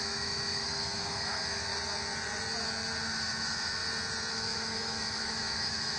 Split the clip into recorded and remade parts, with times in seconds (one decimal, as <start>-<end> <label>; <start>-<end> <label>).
0.0-1.7 remade; 1.7-3.0 recorded; 3.0-3.8 remade; 3.8-4.3 recorded; 4.3-6.0 remade